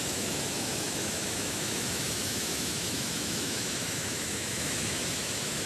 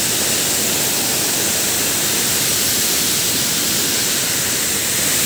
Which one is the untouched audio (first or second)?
second